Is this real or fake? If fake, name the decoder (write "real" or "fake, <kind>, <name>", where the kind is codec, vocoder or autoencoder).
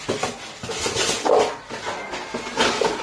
real